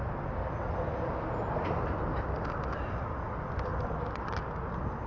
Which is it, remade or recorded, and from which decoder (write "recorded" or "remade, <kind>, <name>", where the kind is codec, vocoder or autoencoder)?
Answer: recorded